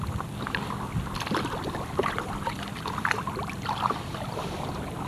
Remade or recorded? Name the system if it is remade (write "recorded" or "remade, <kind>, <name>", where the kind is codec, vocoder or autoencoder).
remade, vocoder, BigVGAN v2